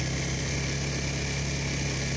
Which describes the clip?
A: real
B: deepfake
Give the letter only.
A